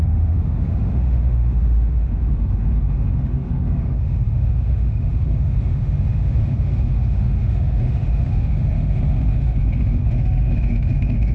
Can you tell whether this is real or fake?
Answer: fake